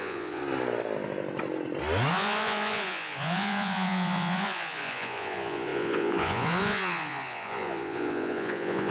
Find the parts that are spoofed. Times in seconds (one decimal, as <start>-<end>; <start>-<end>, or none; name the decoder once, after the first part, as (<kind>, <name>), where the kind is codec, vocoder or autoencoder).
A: 0.0-0.4 (vocoder, Vocos); 2.1-8.9